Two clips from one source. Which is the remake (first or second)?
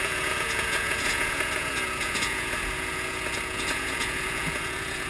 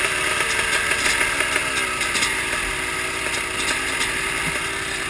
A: first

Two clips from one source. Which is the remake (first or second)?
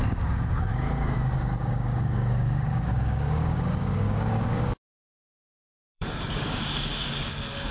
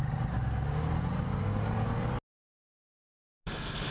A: first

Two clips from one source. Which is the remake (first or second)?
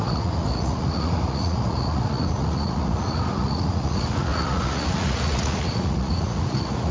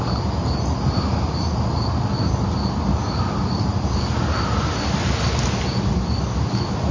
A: first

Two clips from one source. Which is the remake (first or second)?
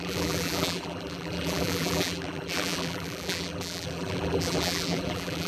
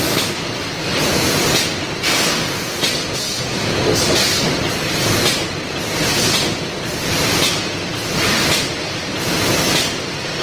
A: first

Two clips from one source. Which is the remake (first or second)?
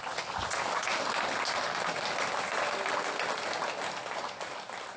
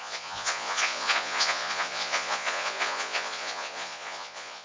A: second